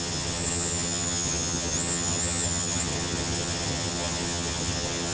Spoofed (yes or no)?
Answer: yes